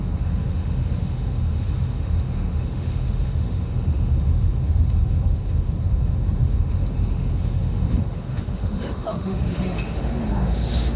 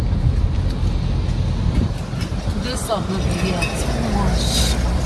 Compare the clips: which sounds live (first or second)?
second